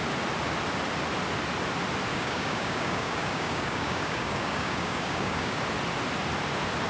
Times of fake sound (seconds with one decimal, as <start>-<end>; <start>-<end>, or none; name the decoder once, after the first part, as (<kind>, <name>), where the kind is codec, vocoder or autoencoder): 2.1-5.6 (codec, DAC)